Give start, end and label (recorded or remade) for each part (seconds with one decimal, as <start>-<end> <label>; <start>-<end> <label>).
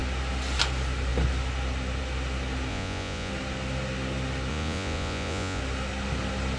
0.0-2.7 recorded; 2.7-3.3 remade; 3.3-4.5 recorded; 4.5-5.6 remade; 5.6-6.6 recorded